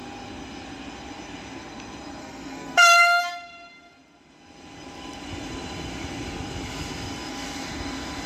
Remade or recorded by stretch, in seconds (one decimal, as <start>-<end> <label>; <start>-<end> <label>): 0.0-2.2 recorded; 2.2-3.2 remade; 3.2-8.3 recorded